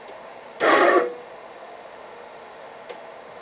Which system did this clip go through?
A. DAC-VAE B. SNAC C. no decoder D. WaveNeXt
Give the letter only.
A